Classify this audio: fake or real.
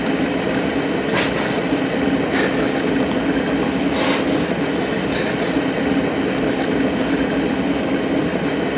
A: real